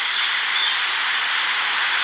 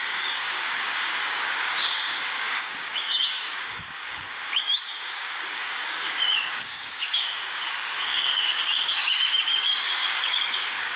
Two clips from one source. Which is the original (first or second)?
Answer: first